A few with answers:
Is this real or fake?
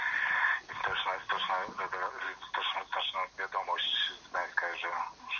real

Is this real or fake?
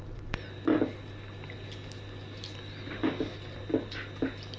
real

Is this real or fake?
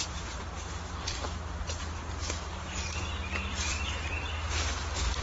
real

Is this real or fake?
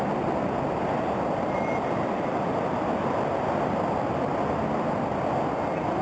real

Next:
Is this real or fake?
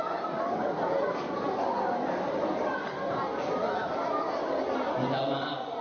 real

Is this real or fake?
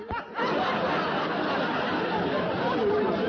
real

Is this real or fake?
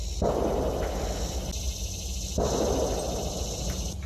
real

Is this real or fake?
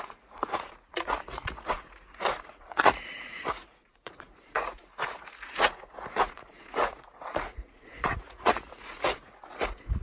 fake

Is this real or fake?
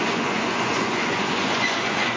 fake